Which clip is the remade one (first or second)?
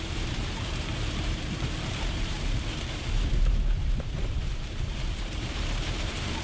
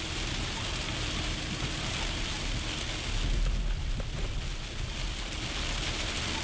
first